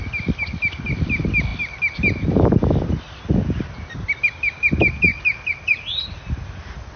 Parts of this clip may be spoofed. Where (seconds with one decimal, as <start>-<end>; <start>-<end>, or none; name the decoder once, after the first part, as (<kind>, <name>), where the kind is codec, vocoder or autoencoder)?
5.1-6.0 (vocoder, BigVGAN v2)